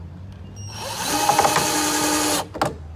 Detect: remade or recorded recorded